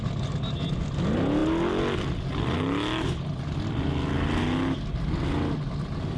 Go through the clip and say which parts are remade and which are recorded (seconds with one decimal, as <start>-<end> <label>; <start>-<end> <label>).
0.0-6.2 recorded